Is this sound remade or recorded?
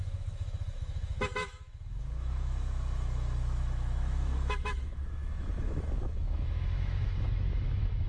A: remade